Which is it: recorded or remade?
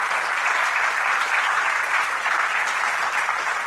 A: recorded